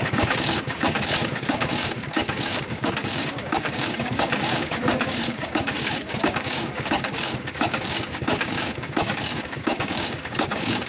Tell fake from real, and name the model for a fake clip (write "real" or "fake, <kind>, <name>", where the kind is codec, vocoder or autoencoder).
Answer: fake, codec, DAC